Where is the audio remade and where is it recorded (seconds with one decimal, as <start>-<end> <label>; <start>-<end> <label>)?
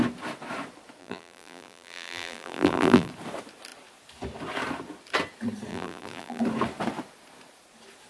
0.0-1.0 recorded; 1.0-3.1 remade; 3.1-5.7 recorded; 5.7-6.4 remade; 6.4-8.1 recorded